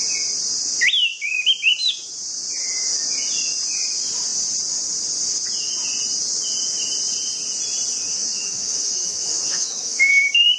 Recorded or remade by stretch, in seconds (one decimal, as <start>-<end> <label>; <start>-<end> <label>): 0.0-8.1 recorded; 8.1-10.1 remade; 10.1-10.6 recorded